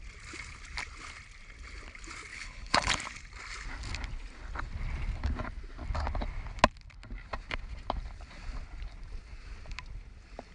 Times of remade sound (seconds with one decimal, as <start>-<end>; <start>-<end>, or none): 2.3-2.9